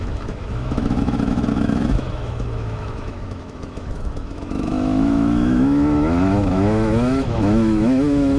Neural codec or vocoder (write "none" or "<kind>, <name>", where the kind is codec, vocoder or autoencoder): autoencoder, DAC-VAE